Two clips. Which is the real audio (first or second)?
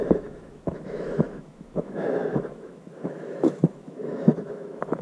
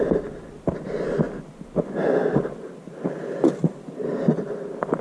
second